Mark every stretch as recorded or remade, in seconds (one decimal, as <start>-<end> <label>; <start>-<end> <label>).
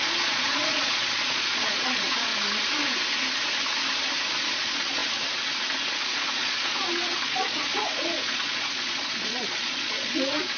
0.0-2.3 remade; 2.3-4.5 recorded; 4.5-5.0 remade; 5.0-5.9 recorded; 5.9-10.6 remade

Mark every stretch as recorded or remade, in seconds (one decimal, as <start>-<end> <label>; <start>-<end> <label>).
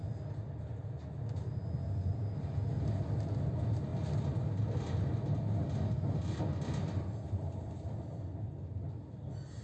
0.0-9.6 recorded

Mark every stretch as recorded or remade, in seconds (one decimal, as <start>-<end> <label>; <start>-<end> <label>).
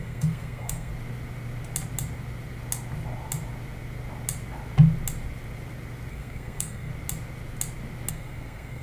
0.0-0.9 remade; 0.9-6.1 recorded; 6.1-6.9 remade; 6.9-8.1 recorded; 8.1-8.8 remade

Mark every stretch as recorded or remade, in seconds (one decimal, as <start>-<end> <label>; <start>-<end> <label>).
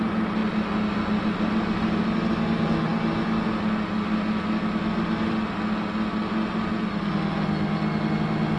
0.0-8.6 recorded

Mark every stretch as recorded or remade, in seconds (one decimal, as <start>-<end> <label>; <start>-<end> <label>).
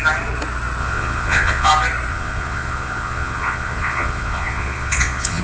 0.0-0.8 recorded; 0.8-1.7 remade; 1.7-2.1 recorded; 2.1-5.4 remade